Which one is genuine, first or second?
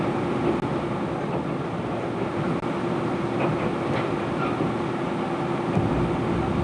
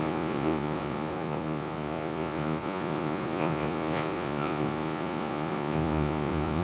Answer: first